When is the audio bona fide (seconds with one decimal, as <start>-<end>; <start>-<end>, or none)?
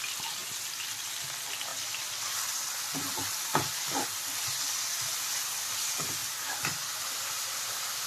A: 0.0-0.4; 1.1-1.7; 2.7-8.1